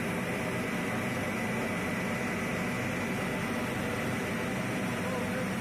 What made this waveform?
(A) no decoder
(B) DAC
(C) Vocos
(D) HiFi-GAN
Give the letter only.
A